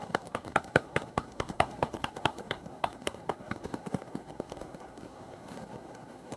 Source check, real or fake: fake